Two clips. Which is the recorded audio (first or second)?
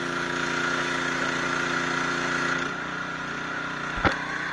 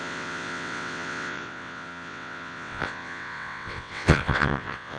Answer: first